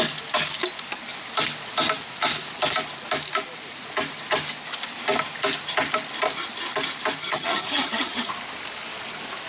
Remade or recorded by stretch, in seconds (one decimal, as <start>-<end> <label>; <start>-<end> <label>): 0.0-7.2 recorded; 7.2-8.3 remade; 8.3-9.5 recorded